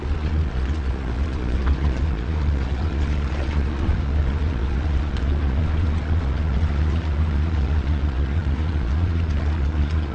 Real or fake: fake